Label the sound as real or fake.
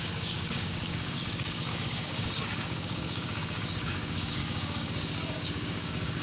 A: fake